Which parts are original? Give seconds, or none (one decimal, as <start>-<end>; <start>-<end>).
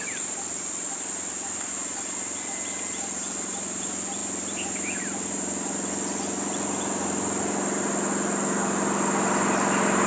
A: 0.0-10.1